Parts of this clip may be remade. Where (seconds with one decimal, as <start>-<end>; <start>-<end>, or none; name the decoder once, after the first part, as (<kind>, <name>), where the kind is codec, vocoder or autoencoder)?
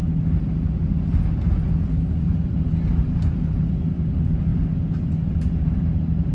none